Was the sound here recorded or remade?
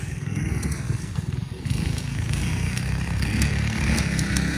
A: remade